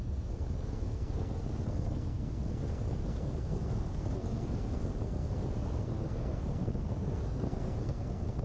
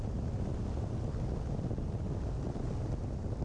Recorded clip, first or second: second